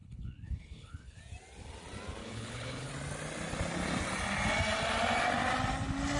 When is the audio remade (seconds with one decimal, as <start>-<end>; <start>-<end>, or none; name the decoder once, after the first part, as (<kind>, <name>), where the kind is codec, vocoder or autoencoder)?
0.0-1.2 (codec, HILCodec); 2.2-2.9